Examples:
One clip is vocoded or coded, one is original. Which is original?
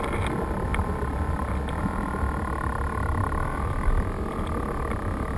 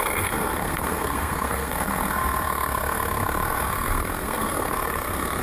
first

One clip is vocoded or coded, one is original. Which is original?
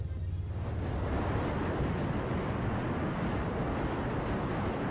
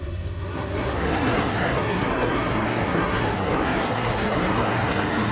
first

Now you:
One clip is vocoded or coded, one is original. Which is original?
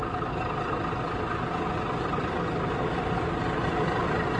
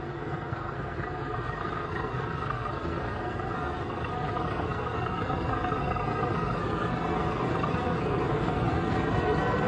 first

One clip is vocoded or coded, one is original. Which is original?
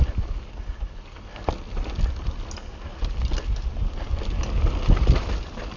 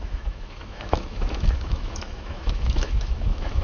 first